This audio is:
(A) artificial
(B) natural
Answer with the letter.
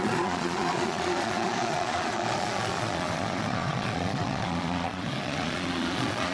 A